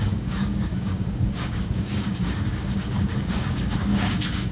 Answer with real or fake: fake